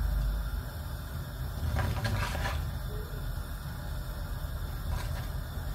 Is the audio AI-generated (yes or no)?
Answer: no